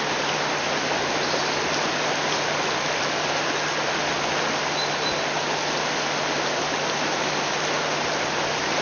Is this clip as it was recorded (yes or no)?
yes